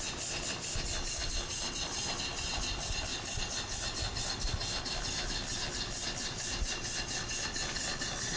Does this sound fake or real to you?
real